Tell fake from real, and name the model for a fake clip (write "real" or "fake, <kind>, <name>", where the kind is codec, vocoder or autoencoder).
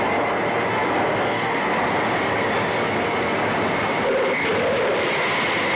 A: real